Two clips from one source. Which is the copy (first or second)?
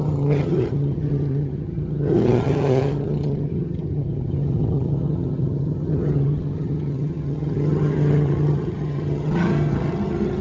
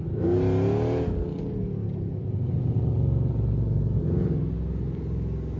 first